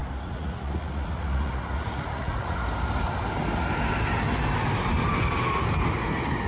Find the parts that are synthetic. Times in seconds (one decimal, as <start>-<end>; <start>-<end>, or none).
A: 0.0-2.6